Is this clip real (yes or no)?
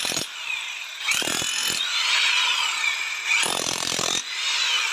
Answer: yes